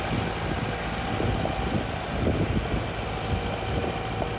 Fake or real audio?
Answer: real